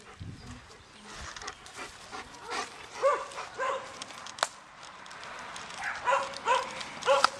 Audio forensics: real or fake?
real